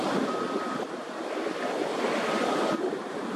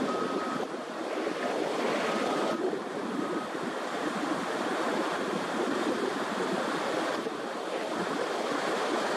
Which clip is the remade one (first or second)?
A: second